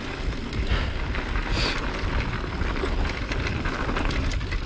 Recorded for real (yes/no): yes